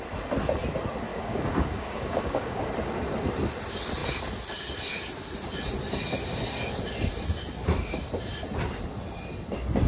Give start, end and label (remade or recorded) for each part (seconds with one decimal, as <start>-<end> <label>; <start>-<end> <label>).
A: 0.0-1.1 recorded; 1.1-2.6 remade; 2.6-9.9 recorded